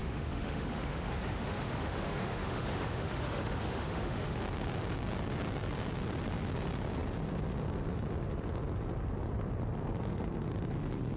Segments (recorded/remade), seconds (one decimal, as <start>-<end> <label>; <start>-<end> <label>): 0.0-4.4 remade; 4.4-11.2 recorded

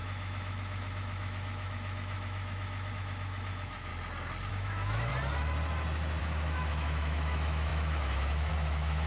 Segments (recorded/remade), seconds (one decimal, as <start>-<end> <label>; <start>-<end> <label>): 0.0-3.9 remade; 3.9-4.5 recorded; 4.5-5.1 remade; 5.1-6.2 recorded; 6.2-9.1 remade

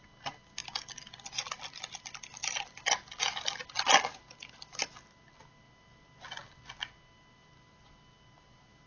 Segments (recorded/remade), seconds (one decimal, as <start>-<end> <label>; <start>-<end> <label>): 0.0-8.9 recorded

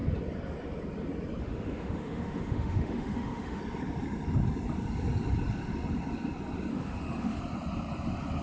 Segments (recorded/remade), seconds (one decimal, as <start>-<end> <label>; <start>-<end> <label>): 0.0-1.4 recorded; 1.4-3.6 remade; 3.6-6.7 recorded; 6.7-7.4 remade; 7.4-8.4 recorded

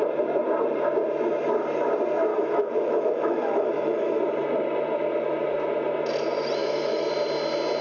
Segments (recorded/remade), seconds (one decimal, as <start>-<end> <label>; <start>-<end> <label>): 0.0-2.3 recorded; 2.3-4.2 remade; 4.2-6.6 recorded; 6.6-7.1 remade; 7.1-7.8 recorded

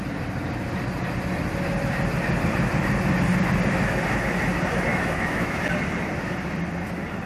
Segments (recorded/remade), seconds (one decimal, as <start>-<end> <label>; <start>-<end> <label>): 0.0-4.9 recorded; 4.9-5.6 remade; 5.6-7.3 recorded